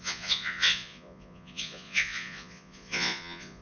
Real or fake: fake